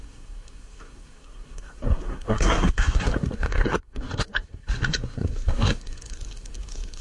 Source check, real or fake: fake